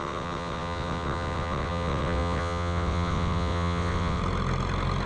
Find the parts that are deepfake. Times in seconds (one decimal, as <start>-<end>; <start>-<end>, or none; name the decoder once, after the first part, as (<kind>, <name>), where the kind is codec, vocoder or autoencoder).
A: 0.0-4.2 (vocoder, WaveNeXt)